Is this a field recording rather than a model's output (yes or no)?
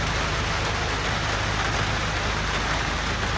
yes